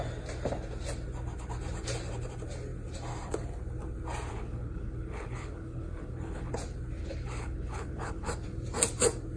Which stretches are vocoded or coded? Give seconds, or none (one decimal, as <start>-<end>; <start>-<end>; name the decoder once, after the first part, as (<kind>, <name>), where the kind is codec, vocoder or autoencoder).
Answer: 4.3-6.5 (codec, HILCodec); 7.0-8.3